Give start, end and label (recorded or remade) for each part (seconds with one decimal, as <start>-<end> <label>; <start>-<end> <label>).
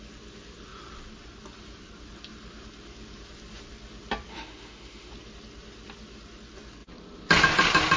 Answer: 0.0-4.3 recorded; 4.3-5.1 remade; 5.1-8.0 recorded